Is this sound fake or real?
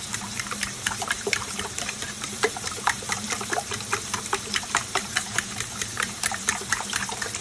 fake